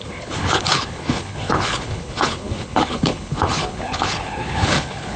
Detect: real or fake fake